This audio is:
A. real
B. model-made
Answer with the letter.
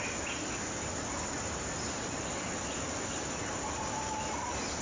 A